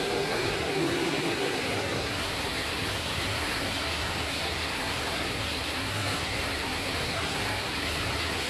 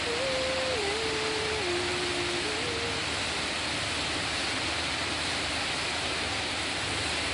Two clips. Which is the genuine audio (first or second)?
second